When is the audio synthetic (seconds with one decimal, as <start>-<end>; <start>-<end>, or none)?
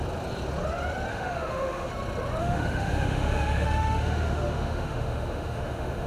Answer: 1.1-1.9; 2.4-6.1